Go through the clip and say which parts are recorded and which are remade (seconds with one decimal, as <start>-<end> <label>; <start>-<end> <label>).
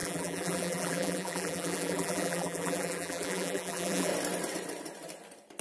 0.0-4.1 remade; 4.1-5.6 recorded